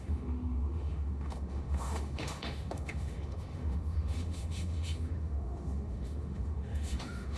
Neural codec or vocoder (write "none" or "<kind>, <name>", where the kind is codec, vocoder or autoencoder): autoencoder, DAC-VAE